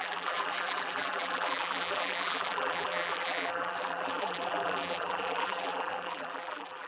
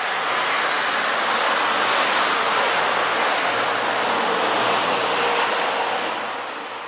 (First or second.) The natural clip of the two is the second